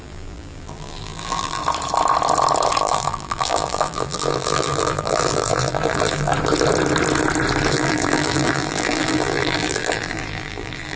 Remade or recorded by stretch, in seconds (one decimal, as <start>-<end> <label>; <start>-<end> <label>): 0.0-1.6 remade; 1.6-2.8 recorded; 2.8-6.3 remade; 6.3-7.7 recorded; 7.7-11.0 remade